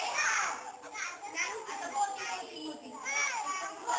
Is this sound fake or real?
real